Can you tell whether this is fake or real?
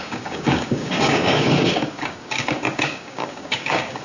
fake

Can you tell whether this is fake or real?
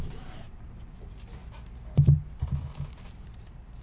real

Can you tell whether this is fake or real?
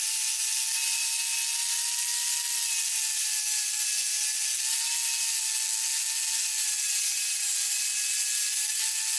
real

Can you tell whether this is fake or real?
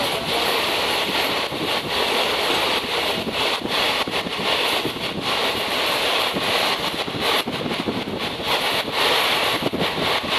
real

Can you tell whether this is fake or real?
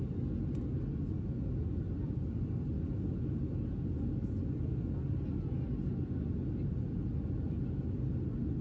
real